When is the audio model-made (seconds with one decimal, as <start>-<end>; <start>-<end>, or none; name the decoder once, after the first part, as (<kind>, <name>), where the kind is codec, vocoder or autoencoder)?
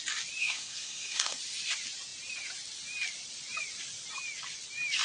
0.4-1.4 (codec, SNAC)